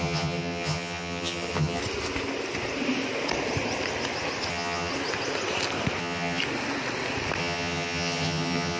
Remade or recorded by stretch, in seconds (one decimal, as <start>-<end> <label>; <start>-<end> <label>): 0.0-1.8 remade; 1.8-4.5 recorded; 4.5-4.9 remade; 4.9-6.0 recorded; 6.0-6.4 remade; 6.4-7.4 recorded; 7.4-8.8 remade